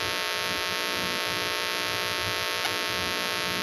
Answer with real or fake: real